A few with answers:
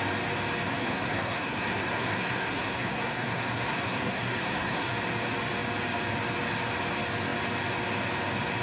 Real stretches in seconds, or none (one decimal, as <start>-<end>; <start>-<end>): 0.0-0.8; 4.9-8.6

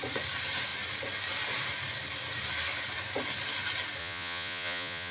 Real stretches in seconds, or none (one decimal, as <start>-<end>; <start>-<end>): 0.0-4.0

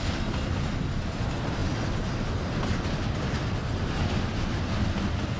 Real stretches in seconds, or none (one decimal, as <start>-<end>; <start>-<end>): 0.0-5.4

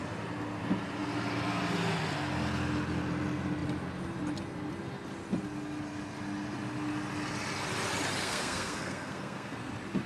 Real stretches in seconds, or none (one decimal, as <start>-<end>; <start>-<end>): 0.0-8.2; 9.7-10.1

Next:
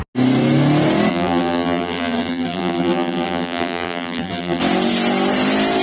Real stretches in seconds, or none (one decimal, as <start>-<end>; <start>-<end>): 0.0-1.1; 4.6-5.8